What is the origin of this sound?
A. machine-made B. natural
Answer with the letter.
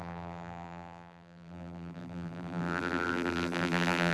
A